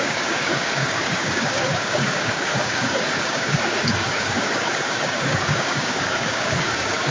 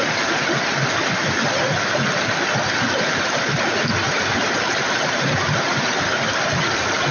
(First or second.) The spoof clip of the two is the first